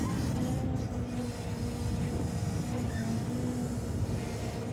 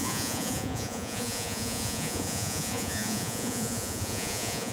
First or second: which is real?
first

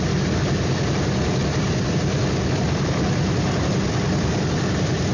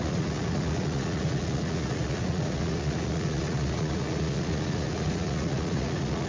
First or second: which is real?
first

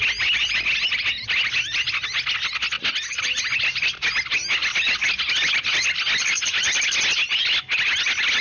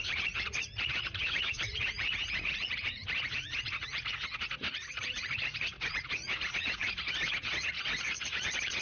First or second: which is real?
first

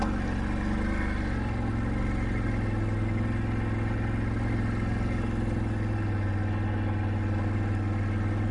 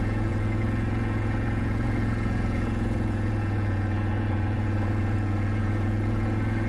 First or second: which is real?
first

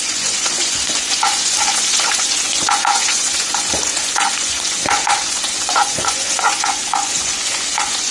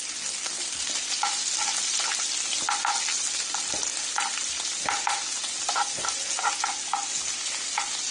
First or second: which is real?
second